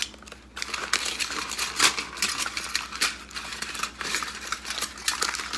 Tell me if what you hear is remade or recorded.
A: recorded